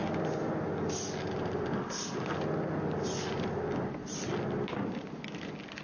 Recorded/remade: recorded